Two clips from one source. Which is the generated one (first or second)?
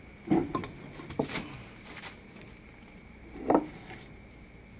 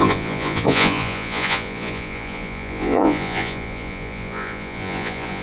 second